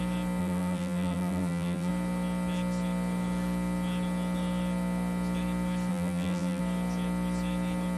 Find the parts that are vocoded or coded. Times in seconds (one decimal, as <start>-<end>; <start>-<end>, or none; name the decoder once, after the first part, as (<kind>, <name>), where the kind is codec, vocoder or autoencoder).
0.4-1.9 (vocoder, BigVGAN v2); 5.9-6.6